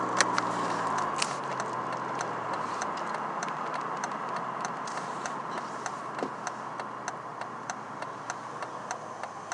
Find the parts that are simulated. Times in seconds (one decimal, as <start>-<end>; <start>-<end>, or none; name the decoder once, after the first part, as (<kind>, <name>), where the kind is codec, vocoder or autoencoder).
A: 1.5-5.5 (vocoder, BigVGAN v2); 7.3-8.2